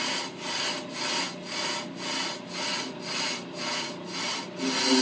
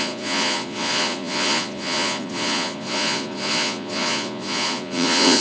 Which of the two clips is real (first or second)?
first